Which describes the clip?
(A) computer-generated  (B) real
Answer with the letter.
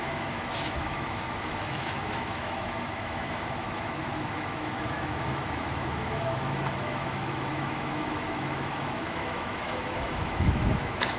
A